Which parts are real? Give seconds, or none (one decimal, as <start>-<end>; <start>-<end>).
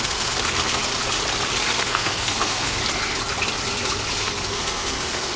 0.9-1.6; 2.8-4.2